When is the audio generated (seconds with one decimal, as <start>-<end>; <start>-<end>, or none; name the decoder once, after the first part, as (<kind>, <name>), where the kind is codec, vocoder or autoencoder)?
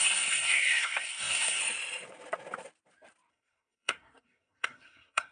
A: 0.0-1.6 (codec, SNAC); 3.3-5.3